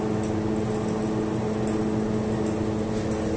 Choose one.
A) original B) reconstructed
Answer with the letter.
A